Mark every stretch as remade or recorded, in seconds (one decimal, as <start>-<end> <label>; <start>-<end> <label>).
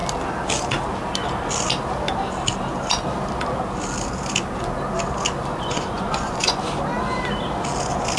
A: 0.0-5.5 recorded; 5.5-6.6 remade; 6.6-8.2 recorded